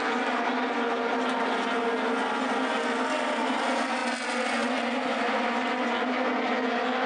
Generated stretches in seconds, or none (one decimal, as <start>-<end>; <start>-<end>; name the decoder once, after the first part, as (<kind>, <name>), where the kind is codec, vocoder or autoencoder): none